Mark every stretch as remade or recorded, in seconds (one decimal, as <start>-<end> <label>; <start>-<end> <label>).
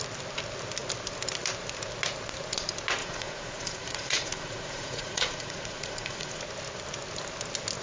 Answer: 0.0-3.0 recorded; 3.0-6.4 remade; 6.4-7.8 recorded